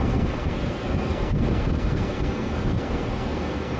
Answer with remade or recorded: remade